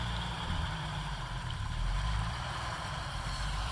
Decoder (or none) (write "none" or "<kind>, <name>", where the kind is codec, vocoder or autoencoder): vocoder, BigVGAN v2